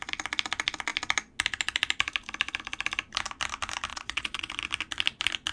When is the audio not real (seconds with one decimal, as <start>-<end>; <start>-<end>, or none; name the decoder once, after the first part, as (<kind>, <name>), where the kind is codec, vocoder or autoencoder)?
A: 3.9-4.5 (vocoder, Vocos)

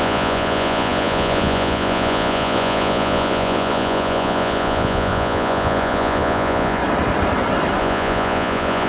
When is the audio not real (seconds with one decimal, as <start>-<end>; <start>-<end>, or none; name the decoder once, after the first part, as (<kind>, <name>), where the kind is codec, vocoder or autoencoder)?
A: 0.0-6.8 (vocoder, Vocos); 7.8-8.9

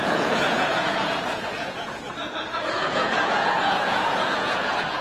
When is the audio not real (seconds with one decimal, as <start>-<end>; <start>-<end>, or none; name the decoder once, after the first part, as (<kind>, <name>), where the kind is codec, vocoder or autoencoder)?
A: 0.0-5.0 (vocoder, Vocos)

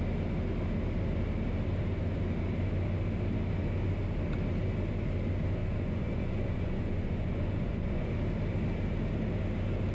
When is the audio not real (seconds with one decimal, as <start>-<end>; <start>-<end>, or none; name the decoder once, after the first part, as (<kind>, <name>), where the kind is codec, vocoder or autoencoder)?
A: 5.6-8.1 (vocoder, Vocos)

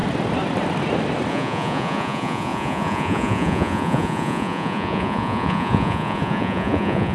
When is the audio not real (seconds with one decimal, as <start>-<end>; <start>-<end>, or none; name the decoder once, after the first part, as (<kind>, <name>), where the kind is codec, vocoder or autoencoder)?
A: 1.3-7.1 (vocoder, Vocos)

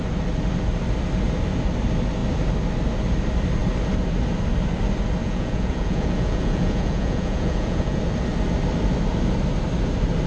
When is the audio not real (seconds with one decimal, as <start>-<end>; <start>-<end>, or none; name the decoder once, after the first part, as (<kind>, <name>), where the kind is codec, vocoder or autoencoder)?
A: 5.2-8.0 (vocoder, Vocos)

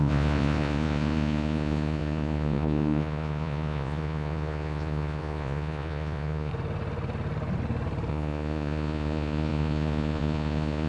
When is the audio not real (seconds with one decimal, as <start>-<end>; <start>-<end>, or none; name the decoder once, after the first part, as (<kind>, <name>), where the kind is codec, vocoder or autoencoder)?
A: 0.0-6.5 (vocoder, Vocos); 8.1-10.9

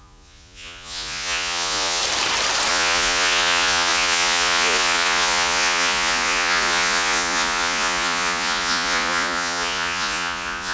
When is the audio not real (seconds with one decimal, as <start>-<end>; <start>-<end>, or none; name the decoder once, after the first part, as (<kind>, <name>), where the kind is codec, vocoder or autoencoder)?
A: 0.0-2.0 (vocoder, Vocos); 2.7-10.7